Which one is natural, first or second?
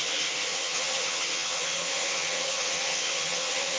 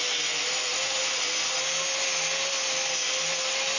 second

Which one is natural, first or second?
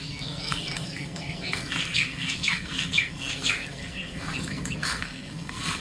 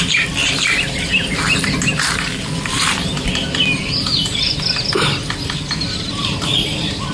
second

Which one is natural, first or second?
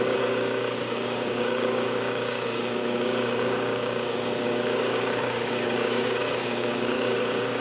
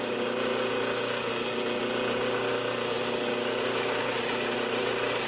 second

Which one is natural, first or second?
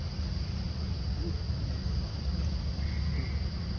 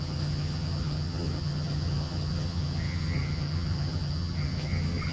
first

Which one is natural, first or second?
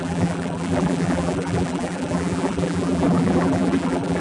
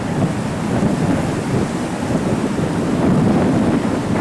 second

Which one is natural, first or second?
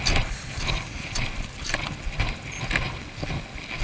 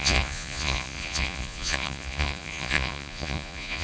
first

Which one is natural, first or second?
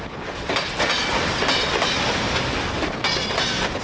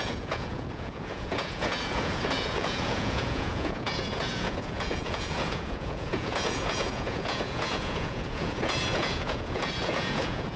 first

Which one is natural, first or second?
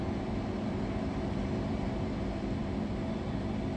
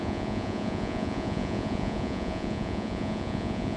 first